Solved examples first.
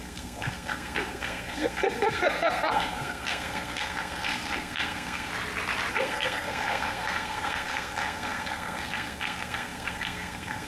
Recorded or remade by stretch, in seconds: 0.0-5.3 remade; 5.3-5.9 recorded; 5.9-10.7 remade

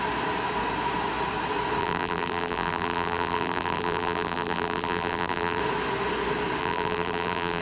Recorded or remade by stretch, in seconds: 0.0-1.8 recorded; 1.8-5.6 remade; 5.6-6.6 recorded; 6.6-7.6 remade

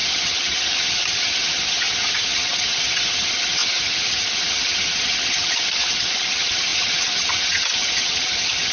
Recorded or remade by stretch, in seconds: 0.0-8.7 remade

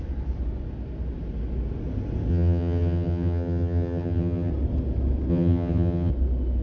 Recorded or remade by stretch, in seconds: 0.0-2.3 recorded; 2.3-4.5 remade; 4.5-5.3 recorded; 5.3-6.1 remade; 6.1-6.6 recorded

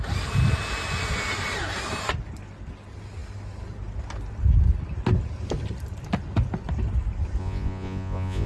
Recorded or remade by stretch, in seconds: 0.0-7.4 recorded; 7.4-8.5 remade

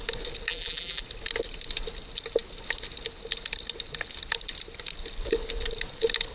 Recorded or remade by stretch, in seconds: 0.0-0.5 recorded; 0.5-1.0 remade; 1.0-6.3 recorded

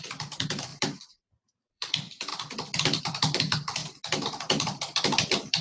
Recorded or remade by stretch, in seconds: 0.0-2.3 remade; 2.3-3.0 recorded; 3.0-3.8 remade; 3.8-4.6 recorded; 4.6-5.6 remade